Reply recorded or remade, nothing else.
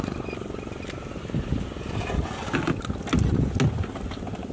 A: recorded